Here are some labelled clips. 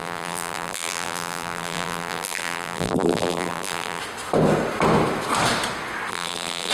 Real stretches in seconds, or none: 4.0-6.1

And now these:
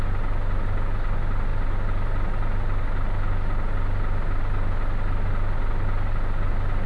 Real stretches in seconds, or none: 0.0-6.9

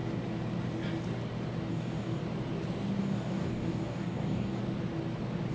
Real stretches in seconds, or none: 0.0-1.7; 2.2-3.0; 4.6-5.5

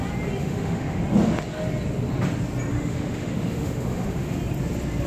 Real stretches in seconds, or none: 0.0-0.4; 1.0-2.7; 4.4-5.1

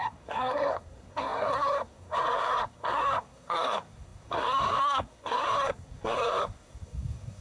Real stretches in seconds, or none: none

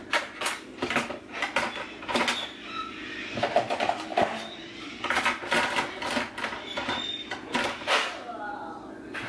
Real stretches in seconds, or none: 0.0-4.1; 5.0-9.3

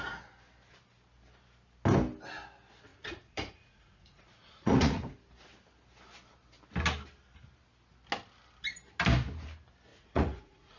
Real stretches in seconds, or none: 0.0-2.9; 5.2-9.9

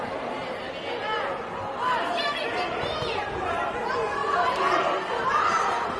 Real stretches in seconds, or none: 0.0-6.0